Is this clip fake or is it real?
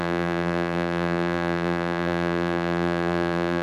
fake